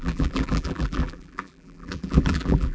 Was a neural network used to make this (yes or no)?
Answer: yes